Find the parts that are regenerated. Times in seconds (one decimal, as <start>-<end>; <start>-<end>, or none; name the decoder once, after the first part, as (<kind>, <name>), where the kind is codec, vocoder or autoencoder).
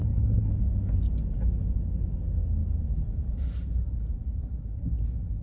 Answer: 0.0-0.5 (codec, SNAC)